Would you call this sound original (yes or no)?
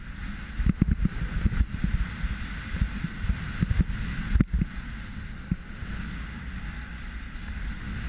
yes